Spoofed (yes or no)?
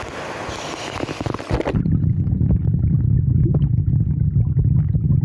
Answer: no